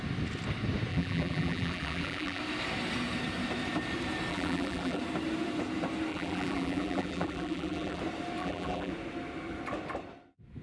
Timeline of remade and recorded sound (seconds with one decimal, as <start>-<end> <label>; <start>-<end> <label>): 0.0-0.9 recorded; 0.9-2.4 remade; 2.4-4.3 recorded; 4.3-5.0 remade; 5.0-6.1 recorded; 6.1-8.0 remade; 8.0-8.4 recorded; 8.4-8.9 remade; 8.9-10.6 recorded